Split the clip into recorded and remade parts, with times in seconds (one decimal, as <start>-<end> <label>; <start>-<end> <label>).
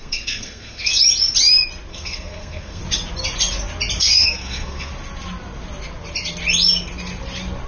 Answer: 0.0-1.0 remade; 1.0-1.9 recorded; 1.9-2.8 remade; 2.8-4.0 recorded; 4.0-4.9 remade; 4.9-7.7 recorded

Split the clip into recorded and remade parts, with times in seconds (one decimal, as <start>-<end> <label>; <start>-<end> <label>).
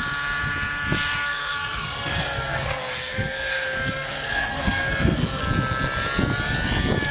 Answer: 0.0-1.1 recorded; 1.1-5.4 remade; 5.4-7.1 recorded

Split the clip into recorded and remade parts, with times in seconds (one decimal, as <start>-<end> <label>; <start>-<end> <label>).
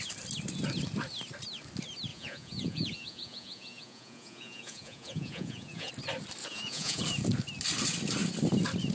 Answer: 0.0-2.1 recorded; 2.1-5.9 remade; 5.9-6.4 recorded; 6.4-7.0 remade; 7.0-8.9 recorded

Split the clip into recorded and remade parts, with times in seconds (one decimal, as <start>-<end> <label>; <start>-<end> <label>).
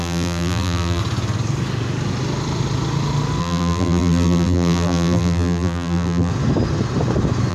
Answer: 0.0-1.0 remade; 1.0-3.4 recorded; 3.4-6.3 remade; 6.3-7.5 recorded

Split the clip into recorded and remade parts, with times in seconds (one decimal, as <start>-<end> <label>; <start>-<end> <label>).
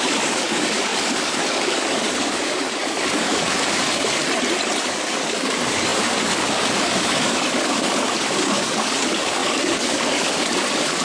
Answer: 0.0-4.2 remade; 4.2-4.8 recorded; 4.8-11.0 remade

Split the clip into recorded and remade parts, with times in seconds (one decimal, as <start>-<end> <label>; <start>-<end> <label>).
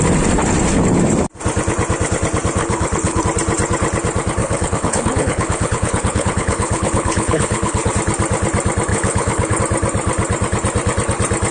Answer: 0.0-2.6 recorded; 2.6-3.2 remade; 3.2-4.4 recorded; 4.4-7.9 remade; 7.9-8.9 recorded; 8.9-9.6 remade; 9.6-11.5 recorded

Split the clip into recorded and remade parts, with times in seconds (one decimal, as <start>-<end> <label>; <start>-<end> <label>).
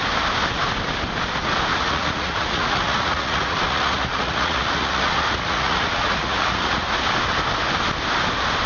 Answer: 0.0-1.7 recorded; 1.7-6.9 remade; 6.9-8.7 recorded